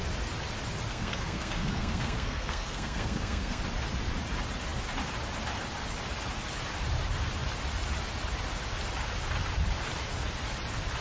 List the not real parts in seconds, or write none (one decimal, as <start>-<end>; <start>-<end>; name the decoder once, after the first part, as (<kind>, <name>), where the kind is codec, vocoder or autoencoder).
0.9-3.6 (codec, SNAC)